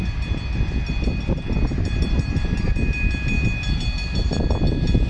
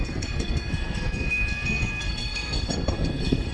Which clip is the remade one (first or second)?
second